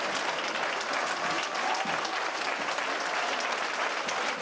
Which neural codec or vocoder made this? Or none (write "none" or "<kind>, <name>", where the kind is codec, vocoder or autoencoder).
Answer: none